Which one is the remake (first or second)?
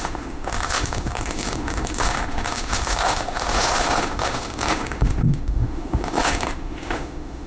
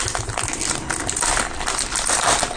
first